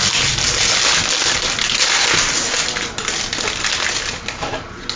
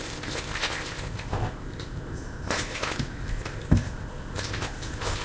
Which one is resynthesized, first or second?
second